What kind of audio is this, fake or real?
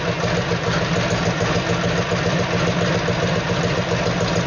real